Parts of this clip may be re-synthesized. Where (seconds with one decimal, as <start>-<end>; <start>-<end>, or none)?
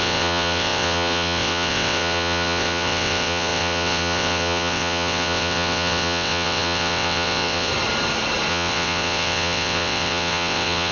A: 0.0-7.7; 8.5-10.9